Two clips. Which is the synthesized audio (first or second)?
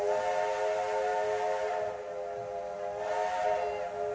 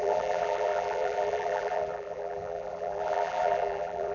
second